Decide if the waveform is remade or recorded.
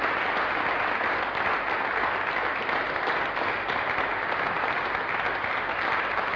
recorded